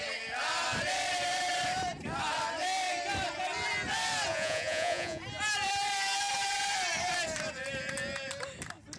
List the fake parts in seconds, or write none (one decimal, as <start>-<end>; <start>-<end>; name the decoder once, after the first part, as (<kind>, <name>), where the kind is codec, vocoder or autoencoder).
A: 4.3-5.2 (vocoder, Vocos)